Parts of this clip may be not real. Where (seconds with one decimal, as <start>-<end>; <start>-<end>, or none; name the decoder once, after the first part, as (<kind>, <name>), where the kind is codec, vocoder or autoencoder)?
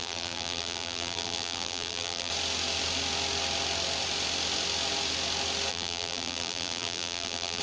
0.0-2.3 (vocoder, BigVGAN v2); 5.7-7.6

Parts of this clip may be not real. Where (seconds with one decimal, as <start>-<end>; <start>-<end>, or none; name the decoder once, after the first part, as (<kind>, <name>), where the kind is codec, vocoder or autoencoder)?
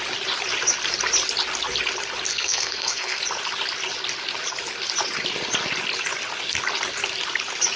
2.3-3.2 (codec, SNAC)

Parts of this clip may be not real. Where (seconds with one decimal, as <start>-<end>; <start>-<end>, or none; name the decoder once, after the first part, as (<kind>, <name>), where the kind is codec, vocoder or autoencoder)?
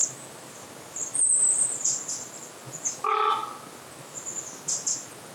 0.0-2.0 (vocoder, BigVGAN v2)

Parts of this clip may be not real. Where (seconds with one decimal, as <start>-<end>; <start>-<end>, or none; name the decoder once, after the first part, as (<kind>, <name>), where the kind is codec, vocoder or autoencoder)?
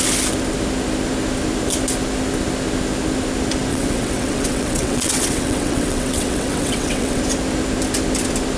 3.7-7.2 (vocoder, WaveNeXt)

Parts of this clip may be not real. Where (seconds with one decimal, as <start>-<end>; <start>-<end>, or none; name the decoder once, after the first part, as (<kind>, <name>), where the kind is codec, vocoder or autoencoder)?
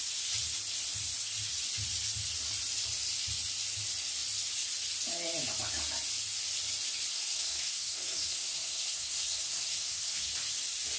7.1-10.3 (codec, SNAC)